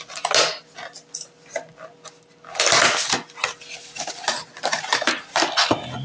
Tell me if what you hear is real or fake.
real